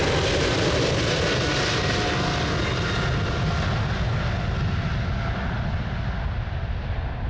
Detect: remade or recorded recorded